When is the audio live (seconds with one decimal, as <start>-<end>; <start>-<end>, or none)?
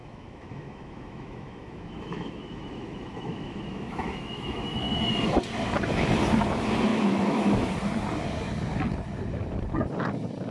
5.0-6.9; 7.7-10.5